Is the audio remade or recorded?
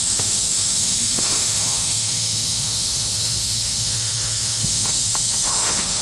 remade